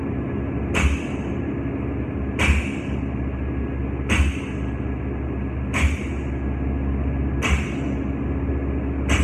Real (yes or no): yes